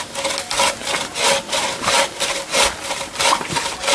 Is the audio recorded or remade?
recorded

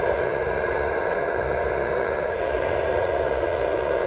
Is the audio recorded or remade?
remade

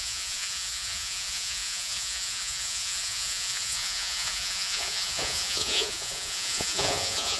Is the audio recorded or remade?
remade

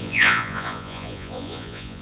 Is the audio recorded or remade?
remade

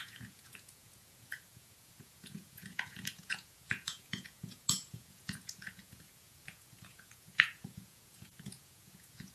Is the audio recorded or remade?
remade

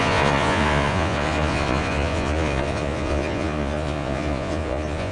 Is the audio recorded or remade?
remade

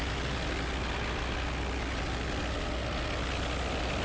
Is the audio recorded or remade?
recorded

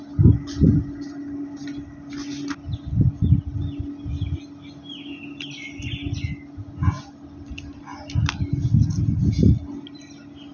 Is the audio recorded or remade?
recorded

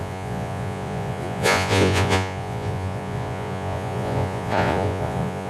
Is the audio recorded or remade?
remade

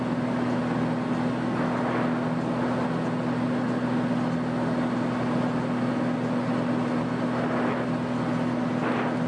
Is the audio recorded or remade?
recorded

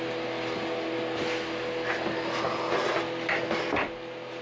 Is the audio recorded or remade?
recorded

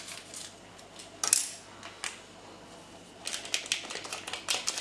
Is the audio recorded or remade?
recorded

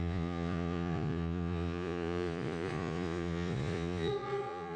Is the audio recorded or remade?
remade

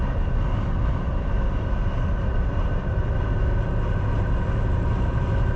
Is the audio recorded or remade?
recorded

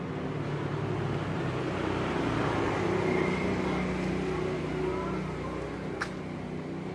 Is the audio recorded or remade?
recorded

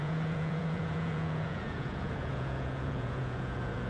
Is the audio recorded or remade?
remade